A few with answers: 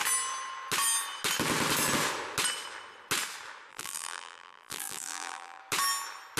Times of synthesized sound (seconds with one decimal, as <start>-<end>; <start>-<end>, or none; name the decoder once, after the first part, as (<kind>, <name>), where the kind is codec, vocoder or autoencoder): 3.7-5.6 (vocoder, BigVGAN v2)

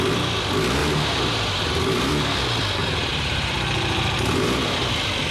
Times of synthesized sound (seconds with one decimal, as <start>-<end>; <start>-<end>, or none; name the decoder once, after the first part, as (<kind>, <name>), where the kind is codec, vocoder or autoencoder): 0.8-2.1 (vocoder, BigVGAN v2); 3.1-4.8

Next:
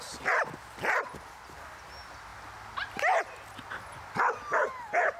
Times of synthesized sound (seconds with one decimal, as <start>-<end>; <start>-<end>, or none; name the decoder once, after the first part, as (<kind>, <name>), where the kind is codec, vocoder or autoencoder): 2.3-4.8 (vocoder, BigVGAN v2)

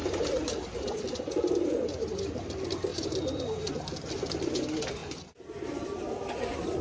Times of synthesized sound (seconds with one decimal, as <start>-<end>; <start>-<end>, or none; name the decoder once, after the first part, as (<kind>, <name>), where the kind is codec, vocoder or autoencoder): 0.0-2.4 (vocoder, BigVGAN v2); 2.9-3.7; 5.0-6.0

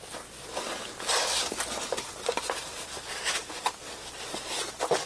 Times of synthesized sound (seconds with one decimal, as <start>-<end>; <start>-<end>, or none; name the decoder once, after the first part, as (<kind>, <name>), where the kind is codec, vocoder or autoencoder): none

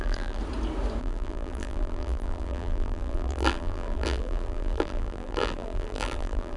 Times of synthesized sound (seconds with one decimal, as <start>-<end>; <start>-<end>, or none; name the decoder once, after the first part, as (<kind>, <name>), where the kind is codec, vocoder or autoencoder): 0.0-0.4 (vocoder, BigVGAN v2); 1.0-6.6